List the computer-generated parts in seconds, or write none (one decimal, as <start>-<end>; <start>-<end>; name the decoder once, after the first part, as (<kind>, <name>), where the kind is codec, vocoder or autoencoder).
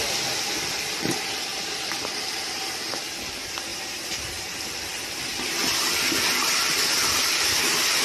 3.7-4.3 (vocoder, BigVGAN v2)